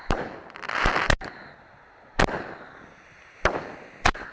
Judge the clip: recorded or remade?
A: recorded